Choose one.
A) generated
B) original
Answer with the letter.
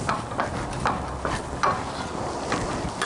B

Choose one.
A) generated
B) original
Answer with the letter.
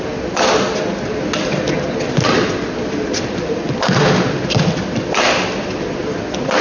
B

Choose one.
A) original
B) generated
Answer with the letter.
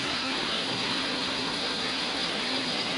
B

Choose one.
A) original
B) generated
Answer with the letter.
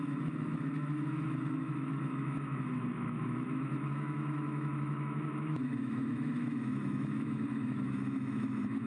B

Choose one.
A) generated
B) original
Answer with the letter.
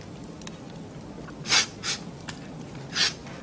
B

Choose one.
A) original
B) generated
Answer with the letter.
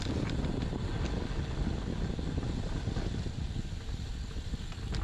A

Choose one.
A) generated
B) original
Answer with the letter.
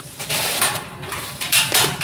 A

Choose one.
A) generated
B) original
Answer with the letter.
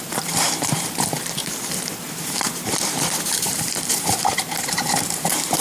A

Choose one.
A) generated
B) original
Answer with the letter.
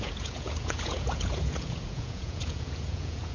A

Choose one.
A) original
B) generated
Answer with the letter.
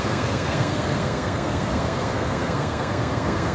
B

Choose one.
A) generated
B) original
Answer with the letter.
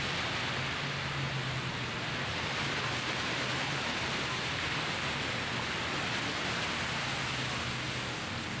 B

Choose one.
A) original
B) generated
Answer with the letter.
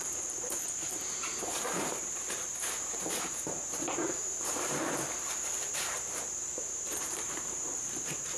B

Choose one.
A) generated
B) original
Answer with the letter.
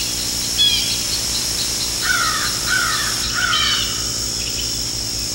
B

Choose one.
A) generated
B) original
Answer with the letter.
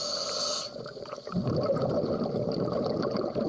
B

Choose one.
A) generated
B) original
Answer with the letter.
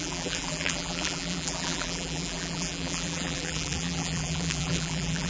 A